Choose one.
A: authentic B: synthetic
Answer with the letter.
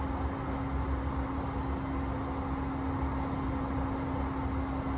A